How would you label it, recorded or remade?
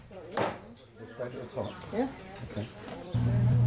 remade